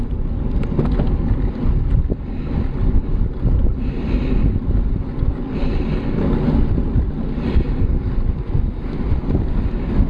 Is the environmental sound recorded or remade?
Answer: recorded